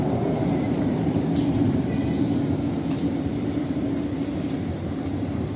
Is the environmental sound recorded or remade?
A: remade